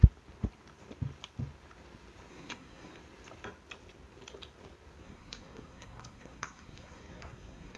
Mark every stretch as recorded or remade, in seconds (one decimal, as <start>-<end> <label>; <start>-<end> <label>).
0.0-2.3 recorded; 2.3-3.0 remade; 3.0-5.0 recorded; 5.0-7.8 remade